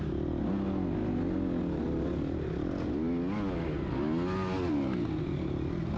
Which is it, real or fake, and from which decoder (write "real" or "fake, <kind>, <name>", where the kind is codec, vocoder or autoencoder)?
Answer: real